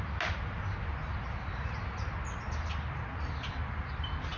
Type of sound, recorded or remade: recorded